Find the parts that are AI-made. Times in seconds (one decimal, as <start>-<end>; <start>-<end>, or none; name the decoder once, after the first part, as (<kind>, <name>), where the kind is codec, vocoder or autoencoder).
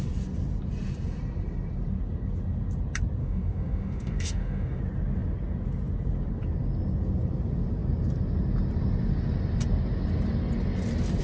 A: 3.2-4.8 (autoencoder, DAC-VAE)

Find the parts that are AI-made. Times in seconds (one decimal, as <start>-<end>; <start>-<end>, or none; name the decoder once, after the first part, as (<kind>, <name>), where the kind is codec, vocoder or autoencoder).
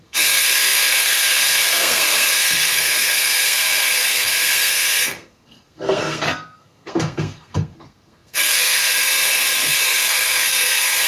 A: 0.0-11.1 (codec, SNAC)